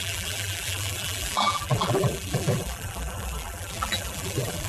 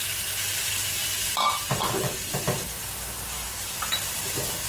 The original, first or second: second